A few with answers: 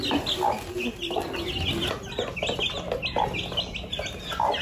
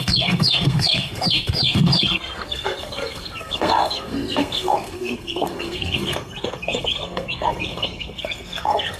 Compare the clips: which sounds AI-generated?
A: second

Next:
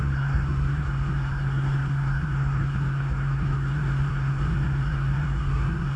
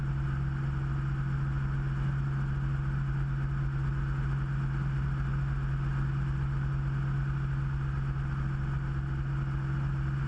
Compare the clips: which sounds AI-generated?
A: first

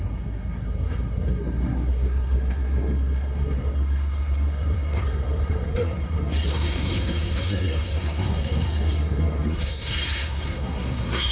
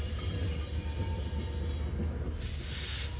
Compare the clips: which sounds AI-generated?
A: first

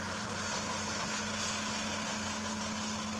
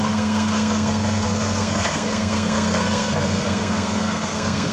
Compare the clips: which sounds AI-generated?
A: second